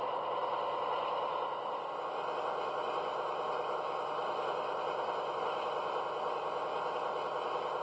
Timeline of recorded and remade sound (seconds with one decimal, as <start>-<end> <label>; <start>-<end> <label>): 0.0-7.8 recorded